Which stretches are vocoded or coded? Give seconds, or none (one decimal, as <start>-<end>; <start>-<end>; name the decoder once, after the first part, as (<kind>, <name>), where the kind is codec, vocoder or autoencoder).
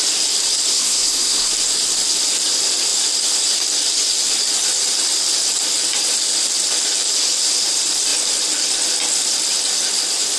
0.7-1.5 (codec, SNAC)